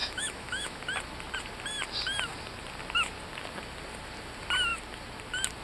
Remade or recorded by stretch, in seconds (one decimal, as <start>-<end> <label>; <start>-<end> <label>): 0.0-0.8 remade; 0.8-5.6 recorded